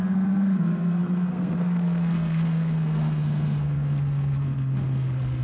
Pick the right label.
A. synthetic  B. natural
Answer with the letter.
A